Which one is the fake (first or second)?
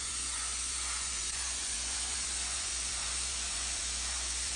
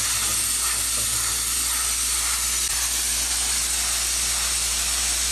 first